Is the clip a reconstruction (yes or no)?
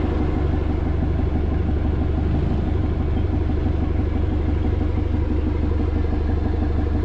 no